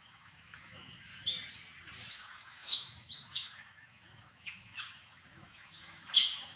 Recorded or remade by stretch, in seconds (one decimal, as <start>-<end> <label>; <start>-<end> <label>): 0.0-1.1 remade; 1.1-2.1 recorded; 2.1-6.6 remade